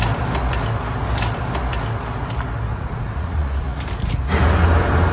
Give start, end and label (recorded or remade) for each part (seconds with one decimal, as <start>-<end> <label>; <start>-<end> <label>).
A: 0.0-2.7 recorded; 2.7-3.8 remade; 3.8-5.1 recorded